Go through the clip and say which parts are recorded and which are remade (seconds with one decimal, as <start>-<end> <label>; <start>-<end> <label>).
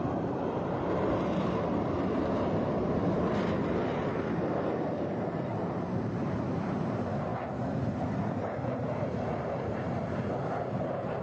0.0-7.3 remade; 7.3-7.9 recorded; 7.9-11.2 remade